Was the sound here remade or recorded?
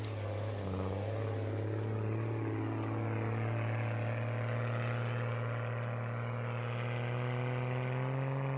recorded